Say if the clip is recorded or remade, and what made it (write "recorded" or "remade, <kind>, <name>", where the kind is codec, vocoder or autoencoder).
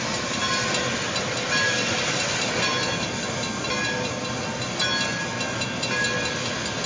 recorded